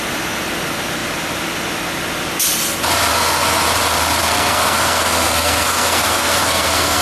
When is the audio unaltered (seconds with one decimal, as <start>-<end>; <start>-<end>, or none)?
0.0-3.1; 3.6-4.2